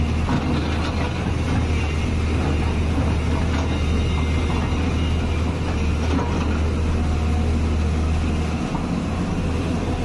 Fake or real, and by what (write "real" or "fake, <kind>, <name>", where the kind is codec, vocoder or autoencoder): real